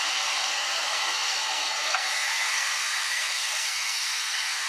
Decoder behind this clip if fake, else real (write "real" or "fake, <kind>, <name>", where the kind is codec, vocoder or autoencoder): fake, codec, SNAC